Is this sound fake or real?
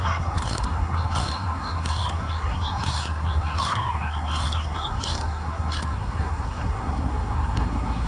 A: fake